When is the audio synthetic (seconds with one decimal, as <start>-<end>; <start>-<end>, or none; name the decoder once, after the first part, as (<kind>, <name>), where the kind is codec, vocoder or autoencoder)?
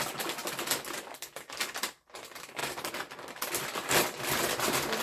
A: 0.0-0.4 (vocoder, BigVGAN v2); 2.2-2.6; 3.2-5.0